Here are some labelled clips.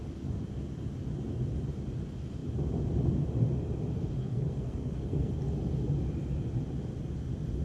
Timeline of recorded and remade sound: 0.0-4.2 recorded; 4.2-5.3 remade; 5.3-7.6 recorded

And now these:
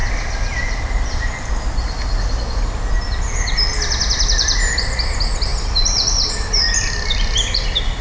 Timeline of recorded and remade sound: 0.0-8.0 recorded

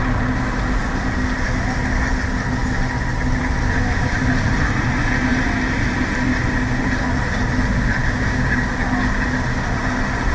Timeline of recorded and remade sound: 0.0-8.0 recorded; 8.0-8.6 remade; 8.6-10.3 recorded

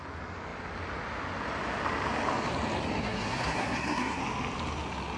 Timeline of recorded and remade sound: 0.0-3.0 recorded; 3.0-4.2 remade; 4.2-5.2 recorded

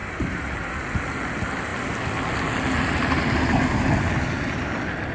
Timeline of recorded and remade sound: 0.0-0.7 remade; 0.7-5.1 recorded

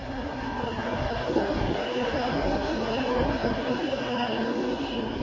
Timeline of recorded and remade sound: 0.0-5.2 remade